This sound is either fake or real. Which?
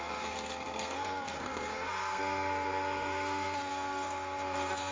fake